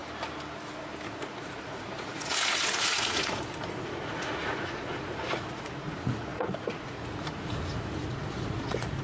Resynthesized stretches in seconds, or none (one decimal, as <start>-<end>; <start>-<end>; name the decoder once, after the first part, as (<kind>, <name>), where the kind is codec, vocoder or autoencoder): 1.1-9.0 (vocoder, Vocos)